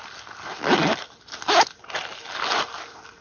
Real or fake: real